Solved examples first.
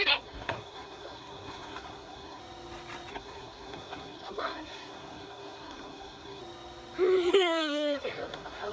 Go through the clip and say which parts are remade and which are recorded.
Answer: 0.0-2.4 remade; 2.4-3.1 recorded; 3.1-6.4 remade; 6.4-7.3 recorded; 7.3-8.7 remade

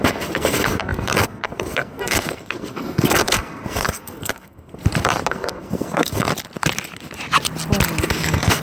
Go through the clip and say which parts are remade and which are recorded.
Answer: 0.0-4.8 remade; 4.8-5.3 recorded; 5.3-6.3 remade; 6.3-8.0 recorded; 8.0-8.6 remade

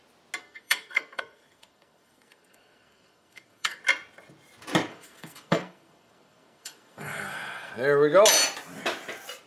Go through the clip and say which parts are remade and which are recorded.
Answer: 0.0-0.4 recorded; 0.4-3.8 remade; 3.8-4.9 recorded; 4.9-7.7 remade; 7.7-9.5 recorded

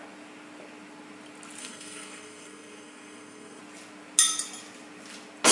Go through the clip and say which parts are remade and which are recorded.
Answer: 0.0-1.6 recorded; 1.6-3.6 remade; 3.6-5.5 recorded

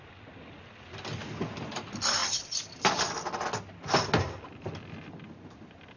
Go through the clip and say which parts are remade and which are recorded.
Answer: 0.0-6.0 recorded